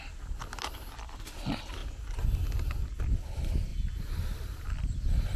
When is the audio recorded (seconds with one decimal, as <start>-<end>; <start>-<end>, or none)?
0.0-5.4